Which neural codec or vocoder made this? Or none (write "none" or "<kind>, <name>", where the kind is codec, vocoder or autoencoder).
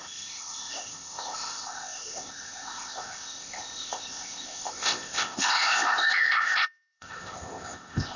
codec, ZipCodec